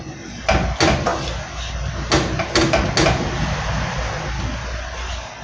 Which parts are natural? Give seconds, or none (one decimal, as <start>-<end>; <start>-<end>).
0.0-5.4